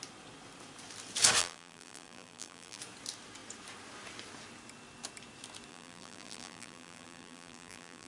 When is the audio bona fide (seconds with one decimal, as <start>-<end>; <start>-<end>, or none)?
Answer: 0.0-1.4; 2.8-5.7